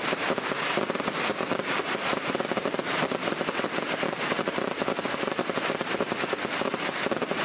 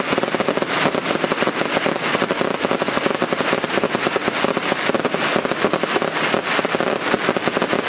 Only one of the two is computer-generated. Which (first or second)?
first